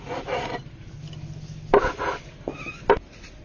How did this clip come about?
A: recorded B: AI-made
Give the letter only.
A